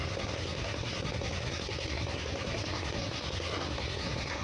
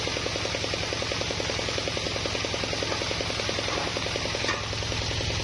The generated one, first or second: first